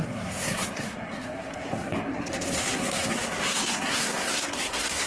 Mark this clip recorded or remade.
remade